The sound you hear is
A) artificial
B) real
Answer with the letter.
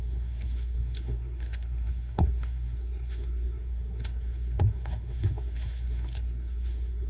A